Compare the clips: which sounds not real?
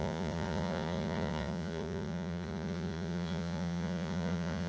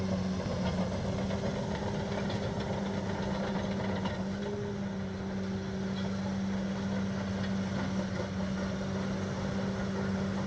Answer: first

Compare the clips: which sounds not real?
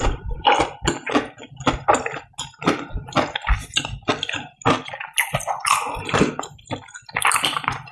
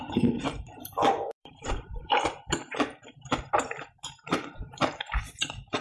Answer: second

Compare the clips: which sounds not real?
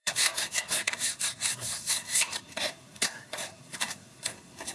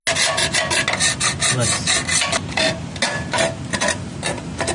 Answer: first